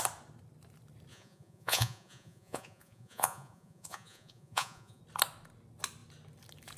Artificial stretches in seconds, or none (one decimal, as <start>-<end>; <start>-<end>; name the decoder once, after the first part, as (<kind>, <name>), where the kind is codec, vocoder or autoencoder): 1.1-5.0 (vocoder, Vocos)